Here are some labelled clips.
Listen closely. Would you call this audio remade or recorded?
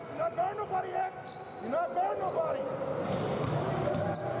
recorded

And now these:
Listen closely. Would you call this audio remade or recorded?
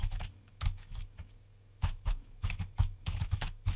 remade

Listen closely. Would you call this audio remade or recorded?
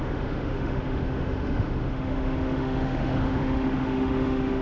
remade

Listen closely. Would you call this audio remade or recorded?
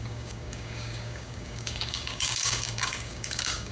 remade